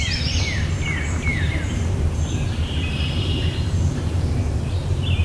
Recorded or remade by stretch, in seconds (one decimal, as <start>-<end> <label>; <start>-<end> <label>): 0.0-1.3 recorded; 1.3-4.4 remade; 4.4-5.2 recorded